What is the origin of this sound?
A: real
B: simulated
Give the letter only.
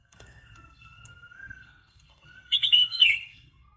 B